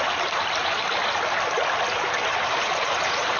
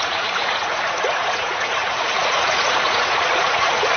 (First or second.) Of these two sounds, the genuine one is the first